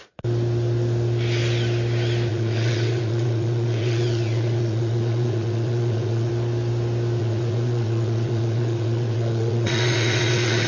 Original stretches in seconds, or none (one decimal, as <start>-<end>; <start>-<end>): 0.0-2.3; 6.3-7.2